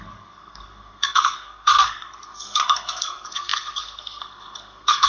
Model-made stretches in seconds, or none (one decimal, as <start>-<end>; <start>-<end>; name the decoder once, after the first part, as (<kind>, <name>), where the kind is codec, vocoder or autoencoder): 0.0-5.1 (codec, SNAC)